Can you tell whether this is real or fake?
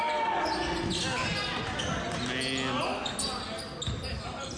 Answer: real